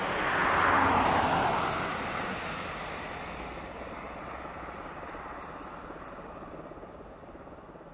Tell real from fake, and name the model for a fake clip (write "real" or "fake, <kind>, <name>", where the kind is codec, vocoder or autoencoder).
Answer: real